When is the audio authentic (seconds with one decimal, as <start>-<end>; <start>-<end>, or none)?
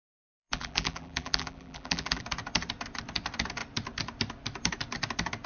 2.2-5.5